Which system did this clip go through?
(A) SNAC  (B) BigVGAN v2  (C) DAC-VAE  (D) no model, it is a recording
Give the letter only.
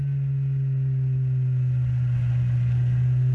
D